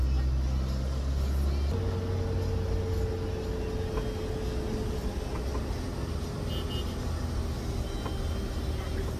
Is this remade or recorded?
recorded